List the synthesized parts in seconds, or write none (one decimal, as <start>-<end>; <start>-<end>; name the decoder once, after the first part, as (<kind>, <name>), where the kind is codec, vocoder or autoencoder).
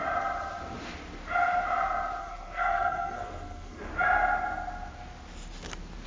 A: 2.2-3.9 (codec, SNAC)